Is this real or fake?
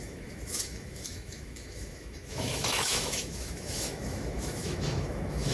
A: fake